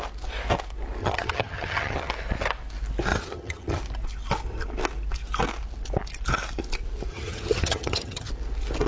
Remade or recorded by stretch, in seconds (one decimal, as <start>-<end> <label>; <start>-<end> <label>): 0.0-1.0 recorded; 1.0-2.1 remade; 2.1-3.1 recorded; 3.1-3.8 remade; 3.8-7.1 recorded; 7.1-8.3 remade; 8.3-8.9 recorded

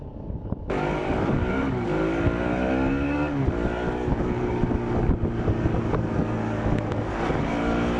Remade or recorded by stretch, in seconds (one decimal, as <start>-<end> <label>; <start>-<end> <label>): 0.0-8.0 remade